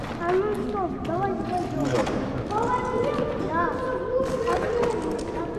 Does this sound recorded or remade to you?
recorded